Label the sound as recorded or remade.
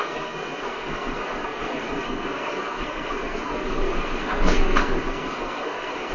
remade